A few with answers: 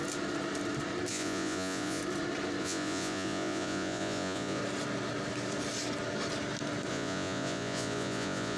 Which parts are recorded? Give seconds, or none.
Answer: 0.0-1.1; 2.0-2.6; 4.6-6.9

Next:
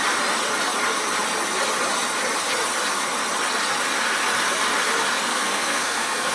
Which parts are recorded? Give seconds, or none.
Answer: 0.0-5.3

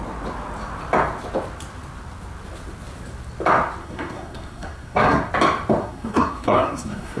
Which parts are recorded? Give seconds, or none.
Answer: 0.0-3.8; 5.3-5.8